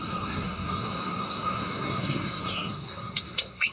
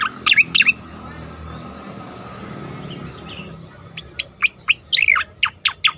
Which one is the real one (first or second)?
second